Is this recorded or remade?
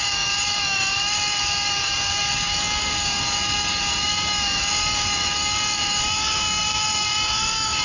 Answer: remade